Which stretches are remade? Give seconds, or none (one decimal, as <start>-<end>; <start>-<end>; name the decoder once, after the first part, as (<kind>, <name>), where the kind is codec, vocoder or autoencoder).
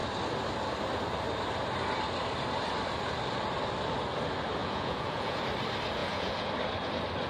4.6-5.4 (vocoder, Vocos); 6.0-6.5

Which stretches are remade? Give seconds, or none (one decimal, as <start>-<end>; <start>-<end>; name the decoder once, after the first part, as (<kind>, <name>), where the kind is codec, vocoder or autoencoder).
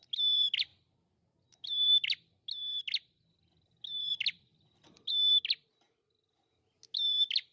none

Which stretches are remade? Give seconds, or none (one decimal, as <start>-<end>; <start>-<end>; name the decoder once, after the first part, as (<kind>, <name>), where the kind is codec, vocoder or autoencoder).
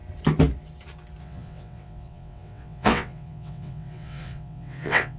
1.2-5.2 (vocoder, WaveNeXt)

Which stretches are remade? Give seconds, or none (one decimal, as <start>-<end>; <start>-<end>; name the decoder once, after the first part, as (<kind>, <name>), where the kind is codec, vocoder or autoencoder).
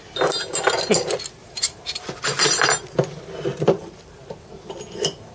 1.4-2.2 (vocoder, BigVGAN v2); 3.5-4.5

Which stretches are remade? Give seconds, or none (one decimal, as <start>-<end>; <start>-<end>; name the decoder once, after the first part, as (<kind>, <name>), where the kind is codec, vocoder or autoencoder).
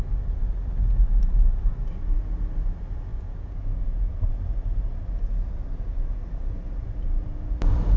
3.1-4.3 (vocoder, Vocos)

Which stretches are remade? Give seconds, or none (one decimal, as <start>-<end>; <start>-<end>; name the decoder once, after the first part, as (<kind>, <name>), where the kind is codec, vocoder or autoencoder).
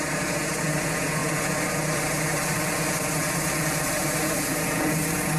none